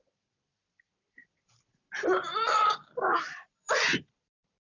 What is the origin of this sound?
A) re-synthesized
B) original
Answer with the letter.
A